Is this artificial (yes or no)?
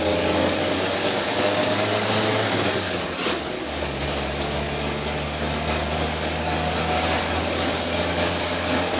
yes